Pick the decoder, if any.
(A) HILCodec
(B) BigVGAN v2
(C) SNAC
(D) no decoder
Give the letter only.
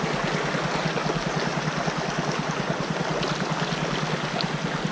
D